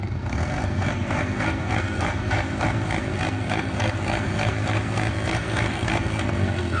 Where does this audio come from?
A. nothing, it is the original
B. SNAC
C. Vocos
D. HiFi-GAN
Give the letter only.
B